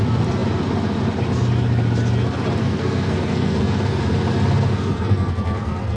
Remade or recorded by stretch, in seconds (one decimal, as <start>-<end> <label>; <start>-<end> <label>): 0.0-2.6 recorded; 2.6-4.0 remade; 4.0-4.7 recorded; 4.7-6.0 remade

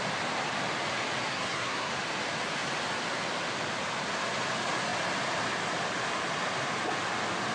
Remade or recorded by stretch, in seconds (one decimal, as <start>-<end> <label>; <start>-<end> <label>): 0.0-1.3 recorded; 1.3-1.9 remade; 1.9-7.5 recorded

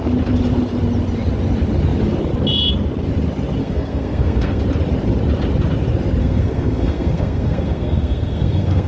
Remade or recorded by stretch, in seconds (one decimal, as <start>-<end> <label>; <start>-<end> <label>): 0.0-3.6 recorded; 3.6-4.6 remade; 4.6-6.2 recorded; 6.2-8.9 remade